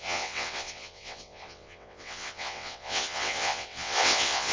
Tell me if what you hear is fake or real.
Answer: fake